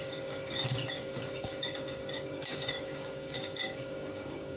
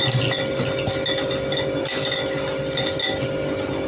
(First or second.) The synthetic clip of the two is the first